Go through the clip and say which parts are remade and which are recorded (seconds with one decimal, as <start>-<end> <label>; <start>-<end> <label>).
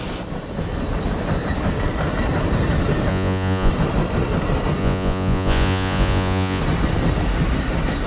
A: 0.0-3.1 recorded; 3.1-3.7 remade; 3.7-4.8 recorded; 4.8-6.6 remade; 6.6-8.1 recorded